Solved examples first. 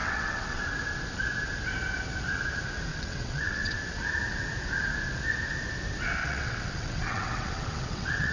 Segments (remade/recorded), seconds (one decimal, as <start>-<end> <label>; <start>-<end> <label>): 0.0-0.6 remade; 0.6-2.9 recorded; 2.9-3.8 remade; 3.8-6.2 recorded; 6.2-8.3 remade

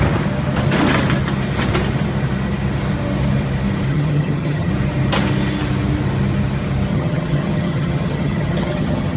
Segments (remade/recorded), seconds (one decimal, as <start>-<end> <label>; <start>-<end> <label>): 0.0-3.9 recorded; 3.9-4.7 remade; 4.7-6.9 recorded; 6.9-9.2 remade

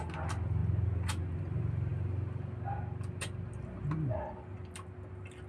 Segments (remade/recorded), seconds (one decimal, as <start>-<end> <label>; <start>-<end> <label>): 0.0-5.5 recorded